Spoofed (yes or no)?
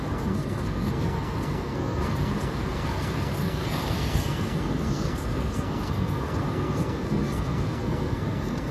yes